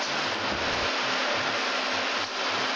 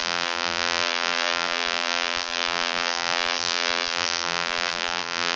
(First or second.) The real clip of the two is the first